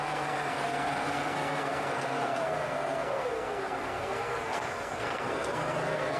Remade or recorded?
remade